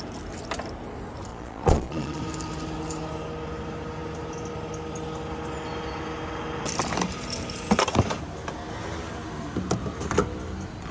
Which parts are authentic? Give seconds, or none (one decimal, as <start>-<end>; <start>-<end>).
0.0-1.3; 2.2-10.9